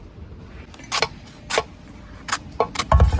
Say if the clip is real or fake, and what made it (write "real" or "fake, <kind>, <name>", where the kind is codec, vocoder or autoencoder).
real